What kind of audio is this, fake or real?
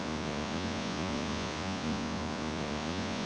fake